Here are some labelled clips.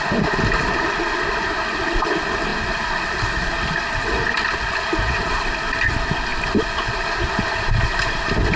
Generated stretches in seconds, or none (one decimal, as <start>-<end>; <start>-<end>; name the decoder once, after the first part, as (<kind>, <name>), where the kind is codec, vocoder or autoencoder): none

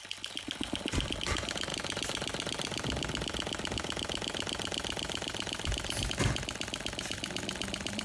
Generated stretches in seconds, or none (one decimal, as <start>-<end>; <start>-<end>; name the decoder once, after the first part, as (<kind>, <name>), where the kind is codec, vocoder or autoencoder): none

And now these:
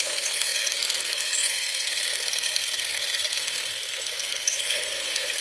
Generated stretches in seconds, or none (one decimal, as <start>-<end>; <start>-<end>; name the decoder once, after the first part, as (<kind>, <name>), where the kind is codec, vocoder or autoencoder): 0.0-5.4 (codec, SNAC)

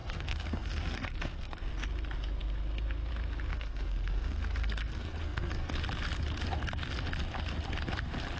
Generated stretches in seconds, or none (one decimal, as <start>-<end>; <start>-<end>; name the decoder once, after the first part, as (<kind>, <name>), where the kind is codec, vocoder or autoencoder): 0.0-1.7 (codec, SNAC); 3.5-5.7